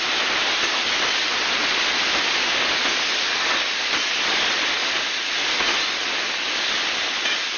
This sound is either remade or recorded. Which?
recorded